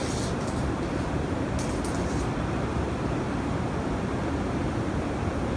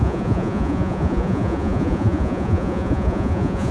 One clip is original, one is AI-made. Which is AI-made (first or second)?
second